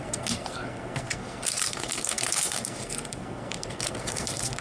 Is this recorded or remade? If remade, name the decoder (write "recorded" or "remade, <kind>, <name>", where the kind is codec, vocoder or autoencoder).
remade, codec, SNAC